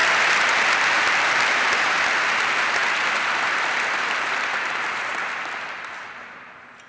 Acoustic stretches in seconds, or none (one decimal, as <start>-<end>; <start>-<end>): 0.0-6.9